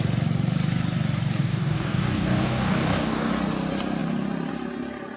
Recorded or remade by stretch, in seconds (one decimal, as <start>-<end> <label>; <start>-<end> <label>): 0.0-1.4 recorded; 1.4-3.3 remade; 3.3-5.2 recorded